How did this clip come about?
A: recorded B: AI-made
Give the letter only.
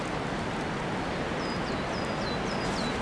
A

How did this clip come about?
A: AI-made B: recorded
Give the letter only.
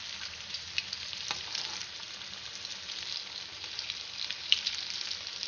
B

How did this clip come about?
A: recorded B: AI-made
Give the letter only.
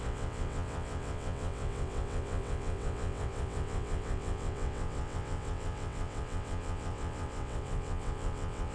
B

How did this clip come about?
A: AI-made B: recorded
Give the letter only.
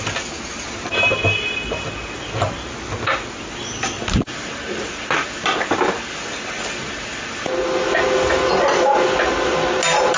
B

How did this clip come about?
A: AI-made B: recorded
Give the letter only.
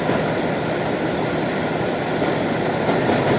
B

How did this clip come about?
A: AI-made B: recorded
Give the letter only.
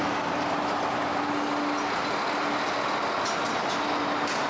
B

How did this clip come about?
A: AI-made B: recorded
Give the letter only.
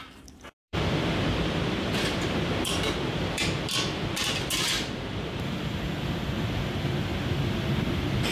A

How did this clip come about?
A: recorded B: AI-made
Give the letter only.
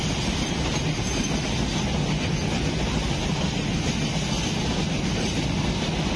A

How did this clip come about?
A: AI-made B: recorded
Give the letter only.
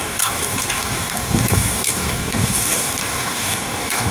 A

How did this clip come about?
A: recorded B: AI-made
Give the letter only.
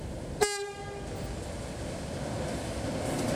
A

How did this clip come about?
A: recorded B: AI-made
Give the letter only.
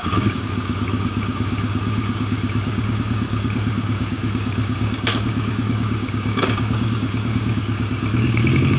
B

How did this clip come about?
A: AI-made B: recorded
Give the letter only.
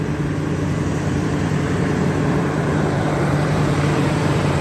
A